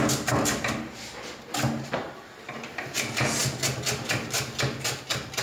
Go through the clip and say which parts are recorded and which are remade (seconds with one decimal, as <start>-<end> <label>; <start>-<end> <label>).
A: 0.0-5.4 recorded